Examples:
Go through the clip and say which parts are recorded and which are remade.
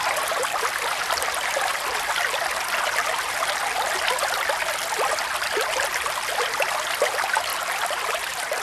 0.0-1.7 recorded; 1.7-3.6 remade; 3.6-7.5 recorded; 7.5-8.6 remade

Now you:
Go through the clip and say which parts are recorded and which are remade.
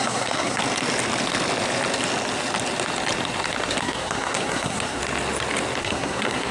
0.0-0.6 remade; 0.6-3.8 recorded; 3.8-5.0 remade; 5.0-5.8 recorded; 5.8-6.5 remade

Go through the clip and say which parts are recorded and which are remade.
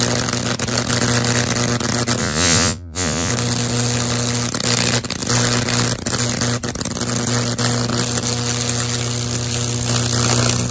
0.0-2.2 recorded; 2.2-3.3 remade; 3.3-10.7 recorded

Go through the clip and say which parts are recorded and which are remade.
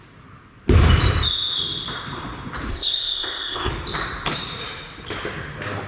0.0-2.7 recorded; 2.7-3.7 remade; 3.7-5.9 recorded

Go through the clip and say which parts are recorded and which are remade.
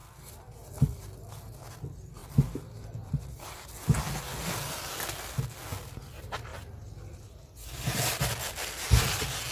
0.0-0.7 remade; 0.7-2.2 recorded; 2.2-3.7 remade; 3.7-9.5 recorded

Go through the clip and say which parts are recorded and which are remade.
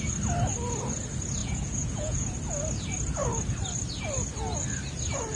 0.0-1.4 recorded; 1.4-2.3 remade; 2.3-5.3 recorded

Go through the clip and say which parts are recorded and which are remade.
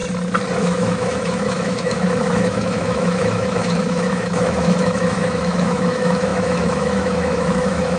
0.0-0.6 recorded; 0.6-8.0 remade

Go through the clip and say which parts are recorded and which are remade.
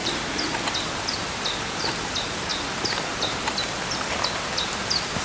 0.0-5.2 recorded